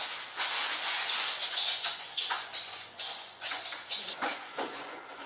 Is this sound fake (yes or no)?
yes